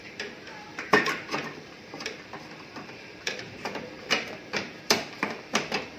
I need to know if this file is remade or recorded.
remade